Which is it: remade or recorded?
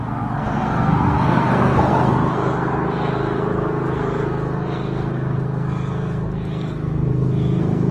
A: remade